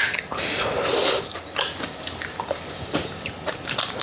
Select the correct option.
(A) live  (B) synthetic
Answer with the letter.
B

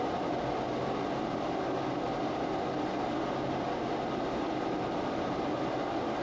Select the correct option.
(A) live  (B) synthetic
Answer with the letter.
A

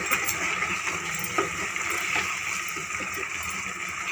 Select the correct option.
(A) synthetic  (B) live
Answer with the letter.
B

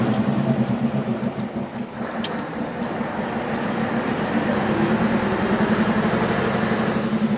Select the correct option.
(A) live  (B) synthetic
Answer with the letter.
A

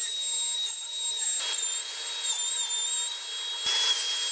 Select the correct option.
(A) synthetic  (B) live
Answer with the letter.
B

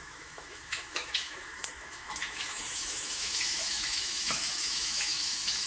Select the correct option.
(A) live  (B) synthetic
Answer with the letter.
B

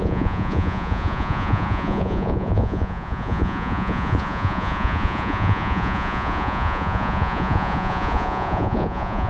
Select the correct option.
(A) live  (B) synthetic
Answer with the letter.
B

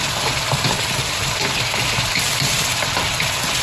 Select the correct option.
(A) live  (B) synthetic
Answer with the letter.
A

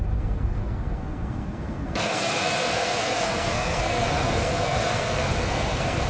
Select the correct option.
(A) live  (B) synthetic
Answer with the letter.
B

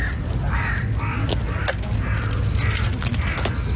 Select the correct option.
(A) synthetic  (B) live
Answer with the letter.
B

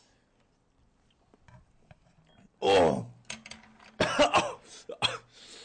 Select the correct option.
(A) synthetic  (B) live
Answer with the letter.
B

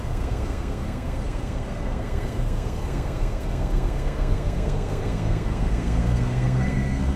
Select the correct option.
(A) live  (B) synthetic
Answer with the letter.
B